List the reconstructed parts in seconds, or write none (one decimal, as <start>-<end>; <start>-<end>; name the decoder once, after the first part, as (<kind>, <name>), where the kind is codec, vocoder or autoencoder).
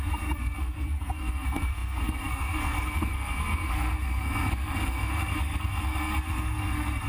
0.0-7.1 (codec, SNAC)